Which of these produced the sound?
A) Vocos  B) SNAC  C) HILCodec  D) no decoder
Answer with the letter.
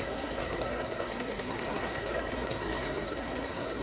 B